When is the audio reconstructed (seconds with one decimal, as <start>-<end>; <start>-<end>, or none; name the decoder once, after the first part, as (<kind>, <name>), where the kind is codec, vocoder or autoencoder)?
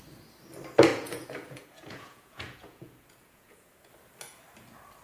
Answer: 0.9-3.9 (vocoder, Vocos)